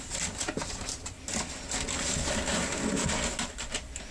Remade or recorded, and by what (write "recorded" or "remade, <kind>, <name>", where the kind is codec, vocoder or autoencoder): recorded